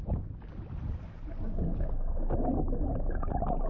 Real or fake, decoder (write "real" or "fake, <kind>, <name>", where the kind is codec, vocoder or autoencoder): real